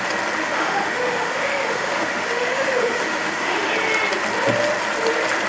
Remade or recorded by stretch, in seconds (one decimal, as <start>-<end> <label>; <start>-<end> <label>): 0.0-0.4 recorded; 0.4-3.7 remade; 3.7-5.5 recorded